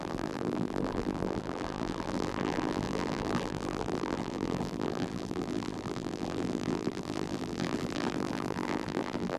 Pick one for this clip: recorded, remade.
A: remade